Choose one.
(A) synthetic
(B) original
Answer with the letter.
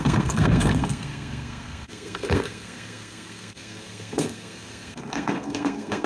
A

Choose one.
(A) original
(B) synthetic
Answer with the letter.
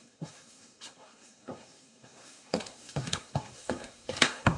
B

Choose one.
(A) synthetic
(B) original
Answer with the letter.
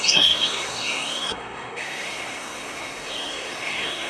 A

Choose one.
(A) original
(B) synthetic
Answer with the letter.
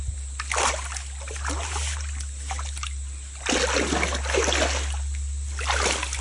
A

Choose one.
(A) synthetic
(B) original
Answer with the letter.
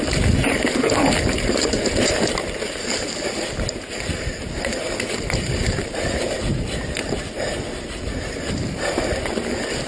B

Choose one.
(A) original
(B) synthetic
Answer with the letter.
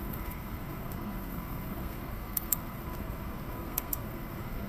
B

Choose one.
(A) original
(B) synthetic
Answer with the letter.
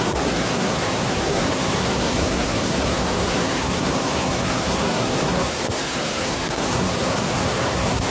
B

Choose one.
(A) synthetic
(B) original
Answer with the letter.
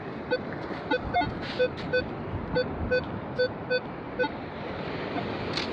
B